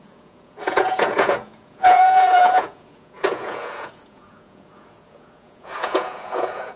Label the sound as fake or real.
fake